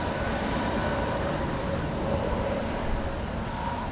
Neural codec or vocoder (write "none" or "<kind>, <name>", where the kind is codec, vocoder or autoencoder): none